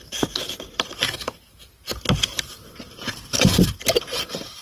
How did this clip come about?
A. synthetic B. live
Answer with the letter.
B